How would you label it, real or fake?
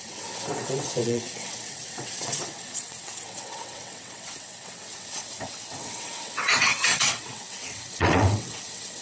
fake